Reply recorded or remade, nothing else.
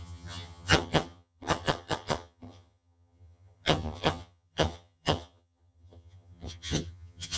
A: remade